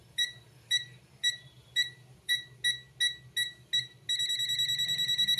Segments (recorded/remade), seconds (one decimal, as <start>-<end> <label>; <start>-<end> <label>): 0.0-2.6 remade; 2.6-5.4 recorded